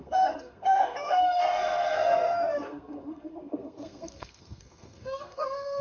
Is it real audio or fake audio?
fake